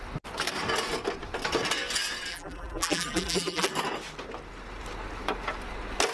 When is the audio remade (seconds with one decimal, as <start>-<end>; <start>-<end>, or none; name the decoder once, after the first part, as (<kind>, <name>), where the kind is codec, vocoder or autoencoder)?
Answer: 2.3-3.7 (vocoder, BigVGAN v2)

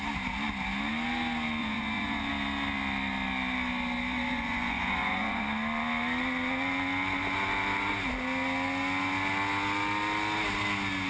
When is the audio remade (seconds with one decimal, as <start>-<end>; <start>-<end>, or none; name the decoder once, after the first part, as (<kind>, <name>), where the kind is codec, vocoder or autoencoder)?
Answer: 1.6-2.3 (vocoder, Vocos); 4.3-5.4